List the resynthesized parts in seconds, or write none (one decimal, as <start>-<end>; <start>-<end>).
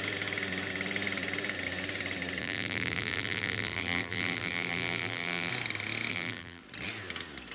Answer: 2.4-5.5; 6.1-6.6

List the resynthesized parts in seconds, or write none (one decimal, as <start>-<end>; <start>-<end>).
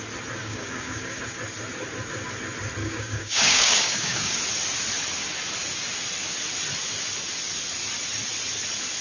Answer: 0.4-1.2; 2.8-4.4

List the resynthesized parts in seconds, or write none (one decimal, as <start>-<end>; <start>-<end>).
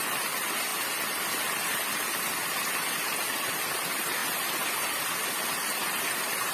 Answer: none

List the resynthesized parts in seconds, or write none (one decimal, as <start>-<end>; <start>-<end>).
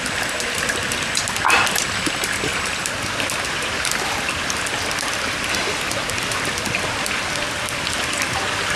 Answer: none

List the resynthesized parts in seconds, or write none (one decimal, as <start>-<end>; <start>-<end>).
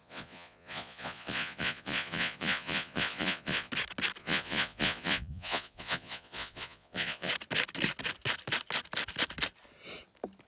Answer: 0.0-3.7; 4.2-7.3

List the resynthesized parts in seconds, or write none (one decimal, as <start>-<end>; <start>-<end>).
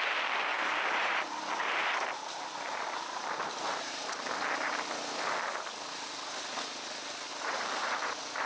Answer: 0.5-4.3; 7.3-8.1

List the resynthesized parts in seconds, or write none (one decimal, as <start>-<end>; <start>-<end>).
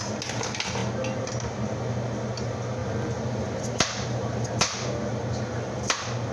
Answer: 2.8-5.1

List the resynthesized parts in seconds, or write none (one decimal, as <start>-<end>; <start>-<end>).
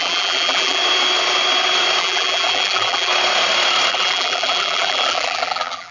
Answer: 0.0-0.8; 2.0-3.1; 3.9-5.9